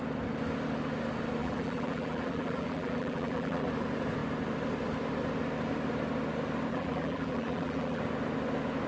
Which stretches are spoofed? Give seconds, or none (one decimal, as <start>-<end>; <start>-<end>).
1.4-3.7; 6.7-8.0